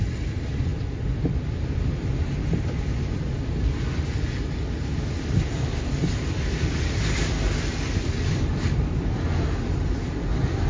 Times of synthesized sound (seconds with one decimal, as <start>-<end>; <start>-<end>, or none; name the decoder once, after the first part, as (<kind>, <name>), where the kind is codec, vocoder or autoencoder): none